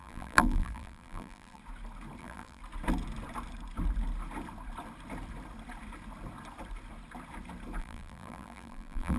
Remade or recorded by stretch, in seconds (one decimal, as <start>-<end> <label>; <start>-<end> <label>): 0.0-1.6 remade; 1.6-2.2 recorded; 2.2-2.6 remade; 2.6-7.8 recorded; 7.8-9.2 remade